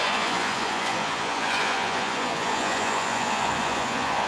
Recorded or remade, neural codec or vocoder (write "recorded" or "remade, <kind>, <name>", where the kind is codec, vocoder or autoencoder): remade, vocoder, Vocos